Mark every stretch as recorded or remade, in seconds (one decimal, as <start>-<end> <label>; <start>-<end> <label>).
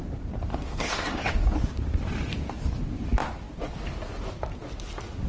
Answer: 0.0-0.5 recorded; 0.5-1.2 remade; 1.2-5.3 recorded